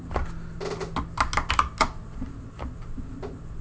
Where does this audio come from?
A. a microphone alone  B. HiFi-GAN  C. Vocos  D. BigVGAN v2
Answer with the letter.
A